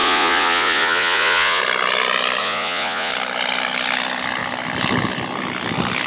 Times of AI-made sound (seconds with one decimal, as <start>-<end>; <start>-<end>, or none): 0.0-1.6; 2.4-3.1